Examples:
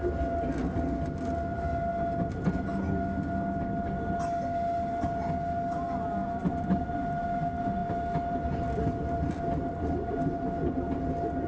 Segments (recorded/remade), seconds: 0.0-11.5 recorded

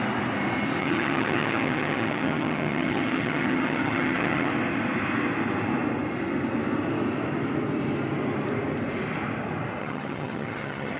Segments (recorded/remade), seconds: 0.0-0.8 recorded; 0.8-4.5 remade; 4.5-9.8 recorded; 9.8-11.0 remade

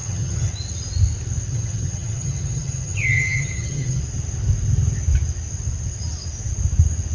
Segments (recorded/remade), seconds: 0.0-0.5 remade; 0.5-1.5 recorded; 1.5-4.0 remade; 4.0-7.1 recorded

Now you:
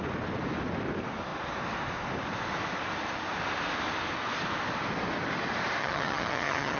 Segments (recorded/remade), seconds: 0.0-5.8 recorded; 5.8-6.8 remade

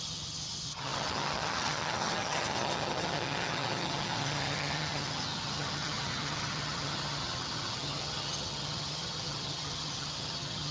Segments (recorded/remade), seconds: 0.0-10.7 remade